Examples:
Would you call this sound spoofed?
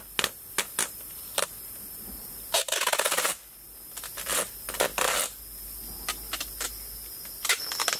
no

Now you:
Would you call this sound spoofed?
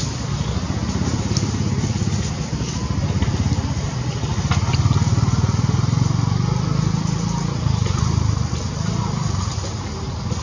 no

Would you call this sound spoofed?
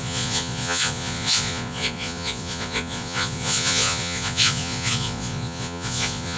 yes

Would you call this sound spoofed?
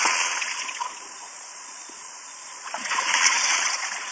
yes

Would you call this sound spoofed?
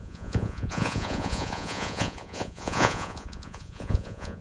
yes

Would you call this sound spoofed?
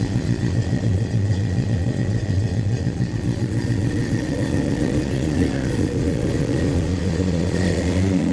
yes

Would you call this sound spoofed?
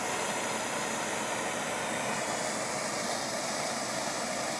no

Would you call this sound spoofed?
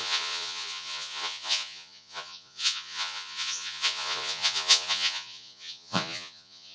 yes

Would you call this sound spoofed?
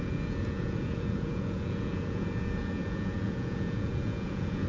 yes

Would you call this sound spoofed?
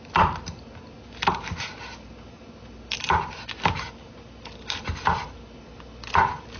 no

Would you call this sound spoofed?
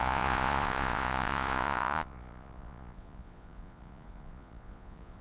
yes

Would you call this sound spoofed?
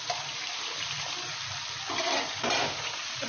no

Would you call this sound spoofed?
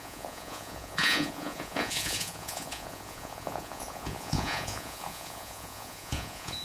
yes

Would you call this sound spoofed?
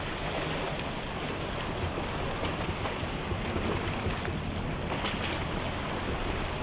no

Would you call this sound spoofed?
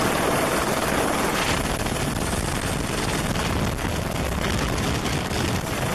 no